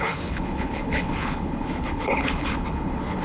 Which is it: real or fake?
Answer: fake